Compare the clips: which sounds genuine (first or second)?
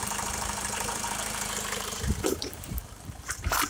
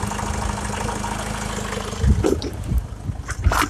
second